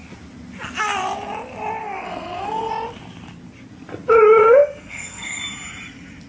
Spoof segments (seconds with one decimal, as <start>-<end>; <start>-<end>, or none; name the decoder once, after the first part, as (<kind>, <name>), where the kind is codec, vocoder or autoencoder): 1.8-2.7 (codec, SNAC); 4.4-5.4